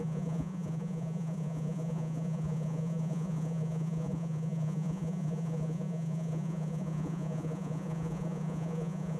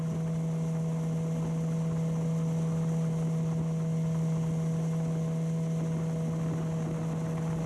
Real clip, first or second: second